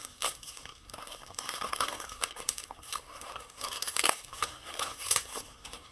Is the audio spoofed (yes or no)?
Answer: yes